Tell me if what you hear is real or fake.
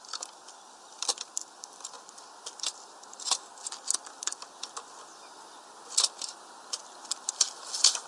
real